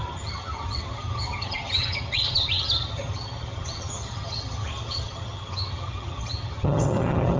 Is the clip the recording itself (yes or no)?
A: no